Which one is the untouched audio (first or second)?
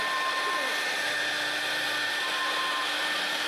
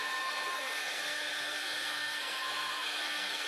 first